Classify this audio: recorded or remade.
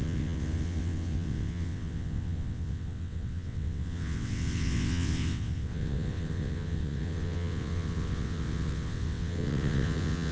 remade